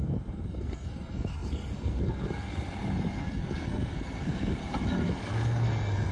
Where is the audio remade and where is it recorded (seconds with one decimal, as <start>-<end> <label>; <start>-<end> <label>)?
0.0-2.5 remade; 2.5-3.2 recorded; 3.2-4.6 remade; 4.6-5.2 recorded; 5.2-6.1 remade

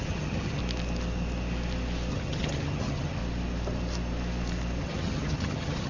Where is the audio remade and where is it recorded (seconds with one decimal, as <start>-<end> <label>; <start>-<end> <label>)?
0.0-0.6 remade; 0.6-2.1 recorded; 2.1-3.2 remade; 3.2-4.8 recorded; 4.8-5.9 remade

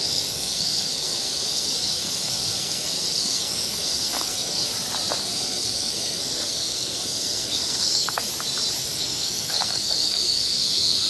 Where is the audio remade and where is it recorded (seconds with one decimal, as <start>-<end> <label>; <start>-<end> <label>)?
0.0-4.7 remade; 4.7-5.2 recorded; 5.2-8.3 remade; 8.3-8.8 recorded; 8.8-11.1 remade

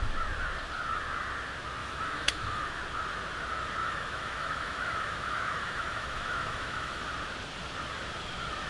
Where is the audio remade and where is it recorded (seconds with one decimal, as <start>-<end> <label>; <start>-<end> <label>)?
0.0-1.8 recorded; 1.8-2.8 remade; 2.8-3.8 recorded; 3.8-7.1 remade; 7.1-8.7 recorded

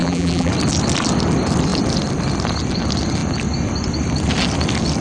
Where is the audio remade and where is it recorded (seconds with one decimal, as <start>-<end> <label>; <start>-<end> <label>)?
0.0-0.5 remade; 0.5-5.0 recorded

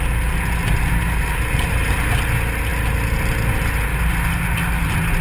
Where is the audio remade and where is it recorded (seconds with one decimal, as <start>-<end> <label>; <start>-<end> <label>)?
0.0-5.2 recorded

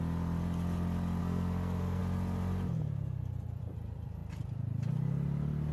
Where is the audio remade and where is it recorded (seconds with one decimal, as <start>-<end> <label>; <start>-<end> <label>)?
0.0-1.2 recorded; 1.2-2.0 remade; 2.0-5.7 recorded